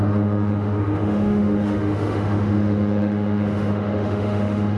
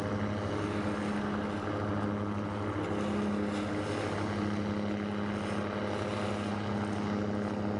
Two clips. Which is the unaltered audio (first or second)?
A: second